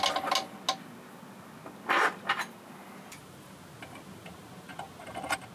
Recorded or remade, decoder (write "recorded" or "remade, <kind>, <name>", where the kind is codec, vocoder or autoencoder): recorded